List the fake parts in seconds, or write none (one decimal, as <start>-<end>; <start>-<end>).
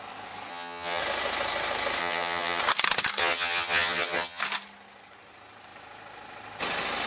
0.5-1.0; 2.0-2.6; 3.2-4.4